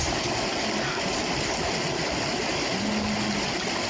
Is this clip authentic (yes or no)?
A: yes